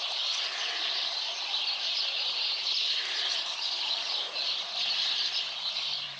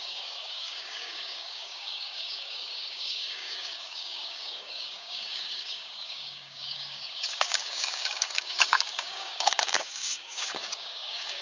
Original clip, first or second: first